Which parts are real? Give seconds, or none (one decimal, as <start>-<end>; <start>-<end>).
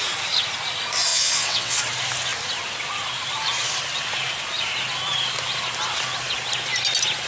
0.0-1.1; 1.8-7.3